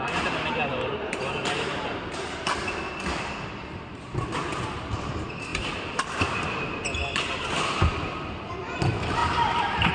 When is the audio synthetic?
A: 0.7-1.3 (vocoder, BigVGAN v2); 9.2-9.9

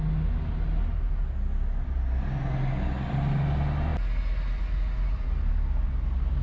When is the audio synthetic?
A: none